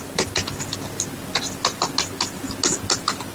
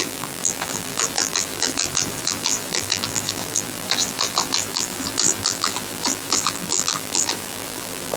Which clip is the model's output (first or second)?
second